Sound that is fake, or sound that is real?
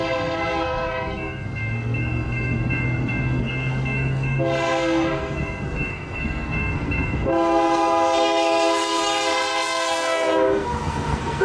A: fake